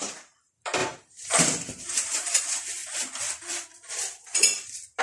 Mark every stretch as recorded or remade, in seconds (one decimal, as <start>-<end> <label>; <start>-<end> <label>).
0.0-2.8 remade; 2.8-5.0 recorded